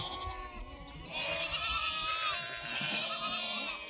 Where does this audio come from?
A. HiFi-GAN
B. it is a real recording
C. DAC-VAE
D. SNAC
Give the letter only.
B